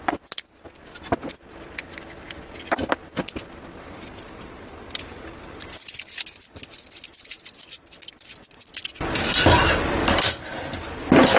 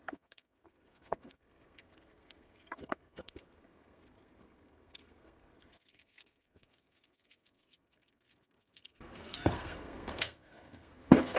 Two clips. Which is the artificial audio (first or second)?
second